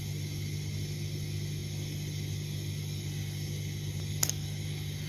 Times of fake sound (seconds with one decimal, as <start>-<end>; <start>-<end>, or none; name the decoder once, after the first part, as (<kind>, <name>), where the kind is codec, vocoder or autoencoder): none